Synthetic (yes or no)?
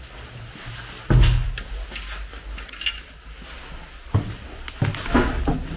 no